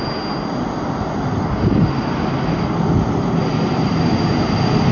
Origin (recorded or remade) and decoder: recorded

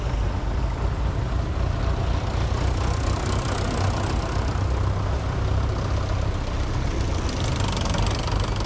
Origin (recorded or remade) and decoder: recorded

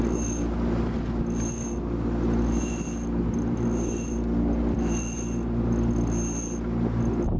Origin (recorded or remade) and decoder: recorded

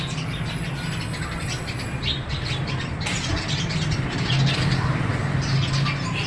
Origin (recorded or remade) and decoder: recorded